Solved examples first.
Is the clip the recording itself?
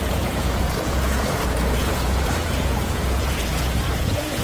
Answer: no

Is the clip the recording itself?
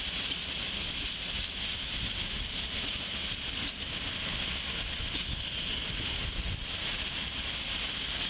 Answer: yes